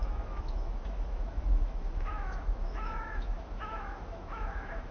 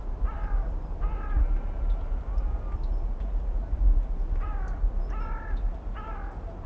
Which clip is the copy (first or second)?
first